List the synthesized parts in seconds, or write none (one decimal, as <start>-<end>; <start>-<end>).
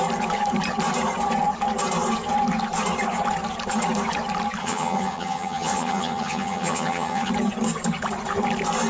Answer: 4.6-7.3